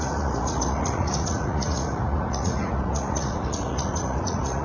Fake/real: fake